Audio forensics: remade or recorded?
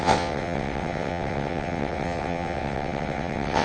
remade